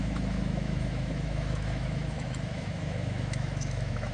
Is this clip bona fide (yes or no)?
no